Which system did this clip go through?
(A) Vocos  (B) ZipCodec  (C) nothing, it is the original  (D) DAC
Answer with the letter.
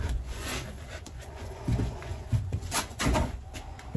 A